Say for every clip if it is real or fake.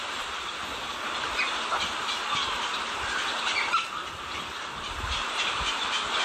real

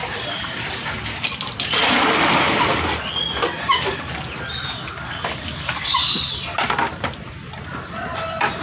real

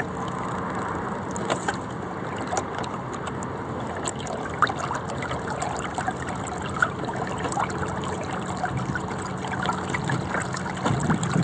real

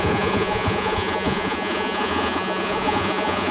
fake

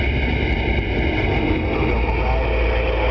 real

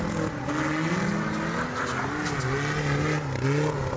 real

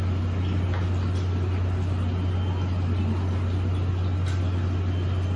real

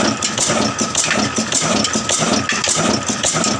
real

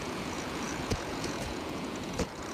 fake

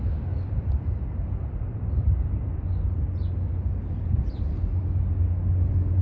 real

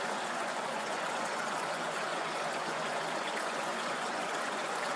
fake